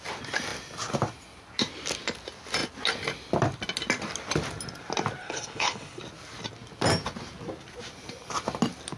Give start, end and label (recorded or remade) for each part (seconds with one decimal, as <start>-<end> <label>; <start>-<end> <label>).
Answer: 0.0-5.2 recorded; 5.2-6.0 remade; 6.0-9.0 recorded